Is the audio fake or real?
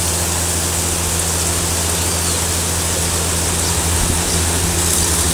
real